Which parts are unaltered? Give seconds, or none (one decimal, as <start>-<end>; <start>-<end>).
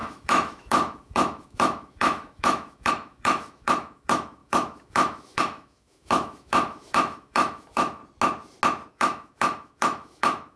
8.0-8.9